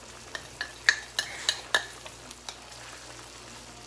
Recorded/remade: recorded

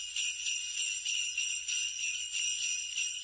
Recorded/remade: recorded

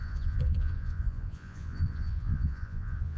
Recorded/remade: remade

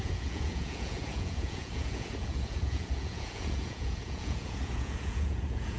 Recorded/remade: remade